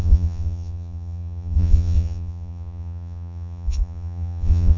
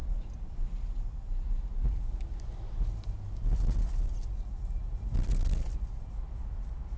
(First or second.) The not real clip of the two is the first